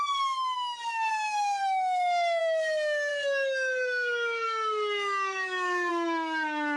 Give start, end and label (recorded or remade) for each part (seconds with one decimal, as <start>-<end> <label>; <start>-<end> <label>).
0.0-1.1 recorded; 1.1-2.4 remade; 2.4-3.1 recorded; 3.1-5.9 remade; 5.9-6.8 recorded